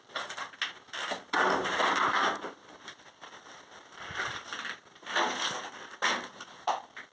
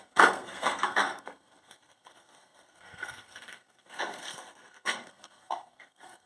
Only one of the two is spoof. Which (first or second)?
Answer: second